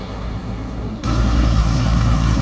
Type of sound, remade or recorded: remade